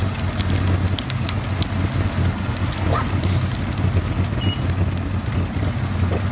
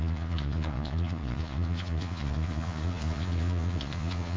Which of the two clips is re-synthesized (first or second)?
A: second